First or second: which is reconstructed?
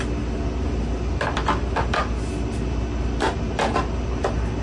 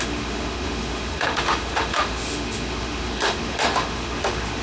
second